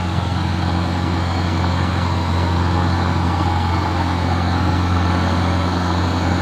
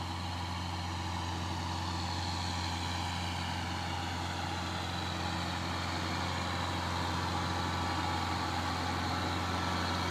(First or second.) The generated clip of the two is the first